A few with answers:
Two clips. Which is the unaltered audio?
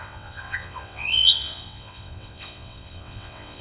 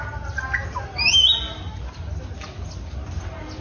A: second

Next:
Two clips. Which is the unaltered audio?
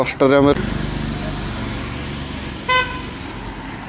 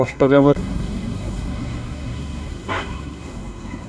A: first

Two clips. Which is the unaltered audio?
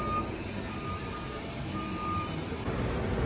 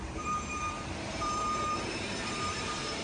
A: first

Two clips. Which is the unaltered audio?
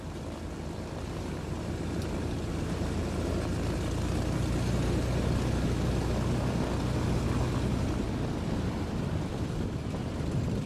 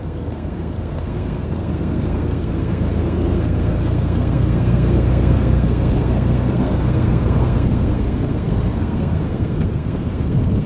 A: first